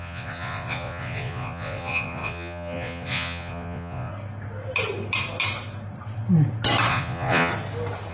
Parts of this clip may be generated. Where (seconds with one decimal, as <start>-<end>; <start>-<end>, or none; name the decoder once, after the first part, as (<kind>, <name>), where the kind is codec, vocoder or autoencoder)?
0.0-4.1 (vocoder, Vocos); 6.9-7.5